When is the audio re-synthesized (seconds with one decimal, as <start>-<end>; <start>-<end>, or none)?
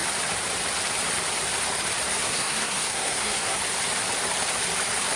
2.2-3.6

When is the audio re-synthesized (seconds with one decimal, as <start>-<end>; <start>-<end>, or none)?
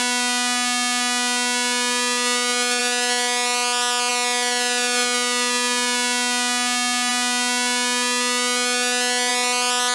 none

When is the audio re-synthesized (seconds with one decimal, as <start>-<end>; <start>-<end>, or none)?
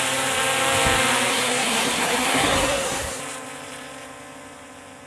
1.3-3.2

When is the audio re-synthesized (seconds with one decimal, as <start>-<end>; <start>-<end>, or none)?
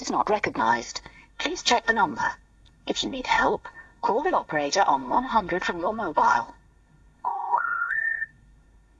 0.6-9.0